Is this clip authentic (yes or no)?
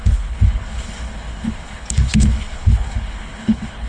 no